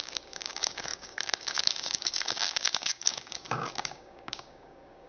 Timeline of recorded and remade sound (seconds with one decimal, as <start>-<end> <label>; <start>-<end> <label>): 0.0-5.1 remade